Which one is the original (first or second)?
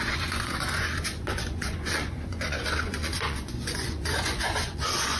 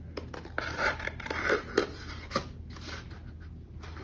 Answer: second